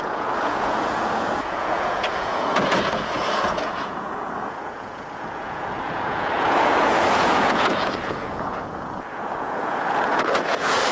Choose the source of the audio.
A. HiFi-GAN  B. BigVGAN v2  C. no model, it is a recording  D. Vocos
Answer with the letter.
D